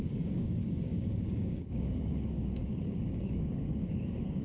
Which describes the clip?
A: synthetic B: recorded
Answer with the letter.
A